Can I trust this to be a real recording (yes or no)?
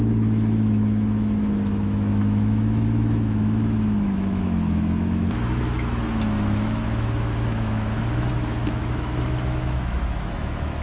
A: no